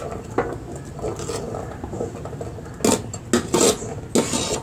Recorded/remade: recorded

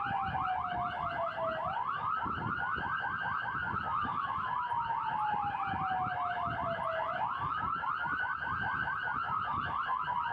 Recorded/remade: recorded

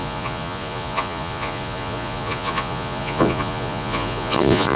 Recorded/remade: remade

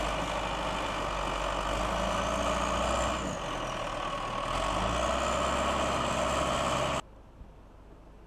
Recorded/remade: recorded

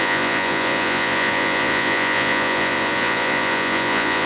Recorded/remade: remade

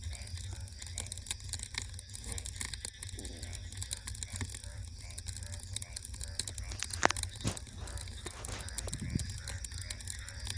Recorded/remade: recorded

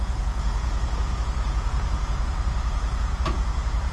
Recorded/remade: remade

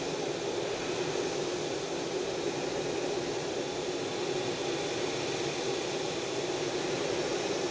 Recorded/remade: recorded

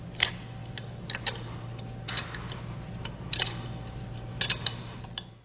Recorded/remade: recorded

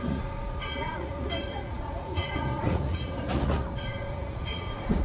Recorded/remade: remade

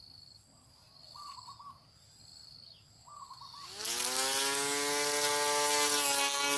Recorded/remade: recorded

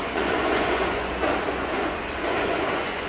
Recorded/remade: remade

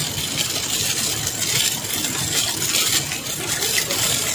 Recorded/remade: recorded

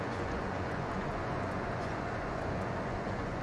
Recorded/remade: remade